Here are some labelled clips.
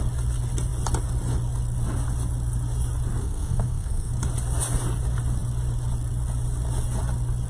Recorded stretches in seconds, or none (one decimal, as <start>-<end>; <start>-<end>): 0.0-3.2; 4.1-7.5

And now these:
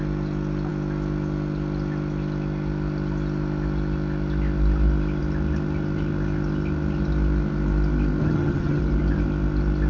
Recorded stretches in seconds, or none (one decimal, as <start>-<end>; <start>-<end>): 0.0-8.2; 8.8-9.9

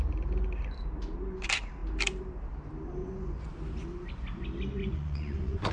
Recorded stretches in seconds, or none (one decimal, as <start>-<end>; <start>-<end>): 0.0-3.0; 3.5-4.8

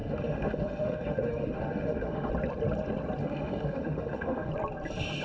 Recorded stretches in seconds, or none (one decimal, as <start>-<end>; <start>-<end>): 2.3-3.2; 4.5-5.2